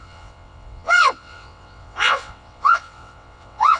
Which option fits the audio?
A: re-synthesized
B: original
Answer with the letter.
A